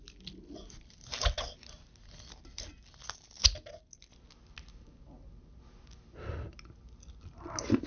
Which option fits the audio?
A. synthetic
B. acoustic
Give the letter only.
B